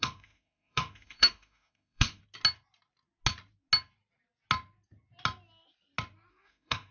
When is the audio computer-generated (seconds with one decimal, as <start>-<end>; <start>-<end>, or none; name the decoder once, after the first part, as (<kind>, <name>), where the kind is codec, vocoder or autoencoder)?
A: 0.0-2.2 (autoencoder, DAC-VAE); 6.3-6.9